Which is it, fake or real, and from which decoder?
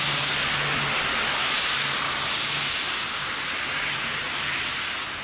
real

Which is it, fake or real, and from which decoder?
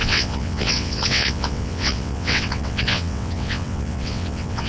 fake, vocoder, WaveNeXt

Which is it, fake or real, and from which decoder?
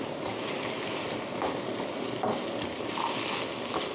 real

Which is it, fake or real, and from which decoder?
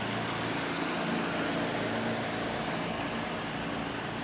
real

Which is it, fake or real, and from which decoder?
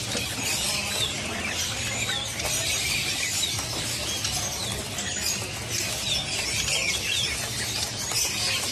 real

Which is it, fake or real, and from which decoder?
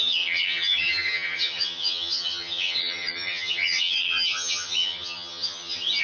fake, vocoder, HiFi-GAN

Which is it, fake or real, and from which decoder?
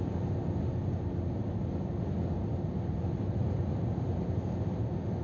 real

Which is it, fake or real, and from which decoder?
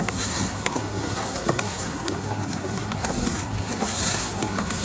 fake, codec, SNAC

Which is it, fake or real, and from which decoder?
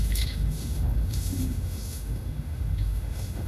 fake, autoencoder, DAC-VAE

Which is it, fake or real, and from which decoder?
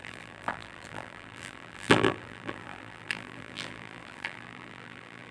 fake, vocoder, BigVGAN v2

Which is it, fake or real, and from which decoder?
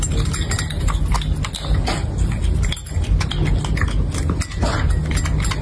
real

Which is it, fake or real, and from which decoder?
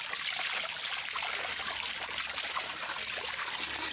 real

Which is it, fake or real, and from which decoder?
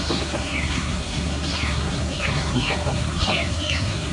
fake, codec, SNAC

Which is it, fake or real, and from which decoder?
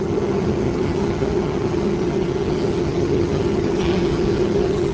fake, vocoder, HiFi-GAN